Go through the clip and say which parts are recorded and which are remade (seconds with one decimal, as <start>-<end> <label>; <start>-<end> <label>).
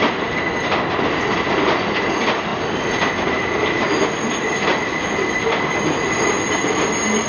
0.0-7.3 recorded